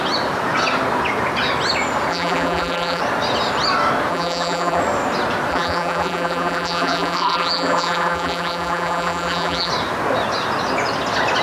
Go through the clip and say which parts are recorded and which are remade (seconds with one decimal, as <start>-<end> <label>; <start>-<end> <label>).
0.0-2.1 recorded; 2.1-3.0 remade; 3.0-4.1 recorded; 4.1-4.8 remade; 4.8-5.5 recorded; 5.5-9.7 remade; 9.7-11.4 recorded